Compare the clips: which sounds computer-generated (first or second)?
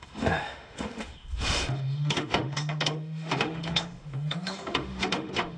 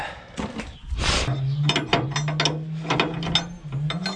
first